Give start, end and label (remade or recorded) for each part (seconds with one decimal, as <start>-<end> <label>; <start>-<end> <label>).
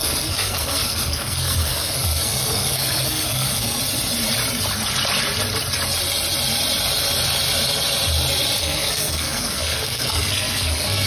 0.0-3.8 remade; 3.8-8.6 recorded; 8.6-11.1 remade